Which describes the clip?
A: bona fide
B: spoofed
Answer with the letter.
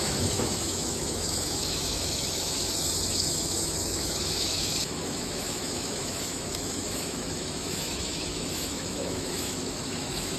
B